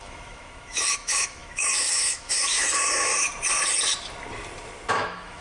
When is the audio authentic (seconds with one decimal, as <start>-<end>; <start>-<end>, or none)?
3.1-4.9